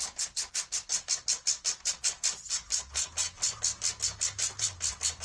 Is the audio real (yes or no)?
yes